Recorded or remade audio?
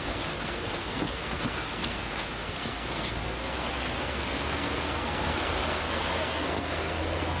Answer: remade